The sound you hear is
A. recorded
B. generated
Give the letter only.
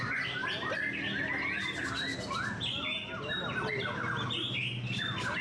A